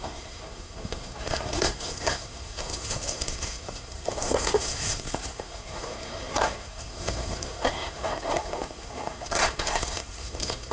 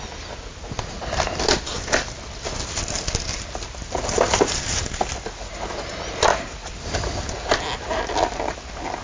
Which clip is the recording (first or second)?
second